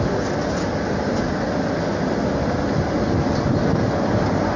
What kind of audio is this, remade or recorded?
recorded